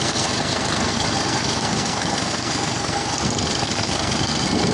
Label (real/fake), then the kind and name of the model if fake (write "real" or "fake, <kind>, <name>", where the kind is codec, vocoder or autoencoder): fake, codec, SNAC